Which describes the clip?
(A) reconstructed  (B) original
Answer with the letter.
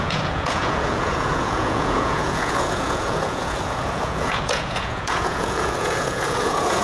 A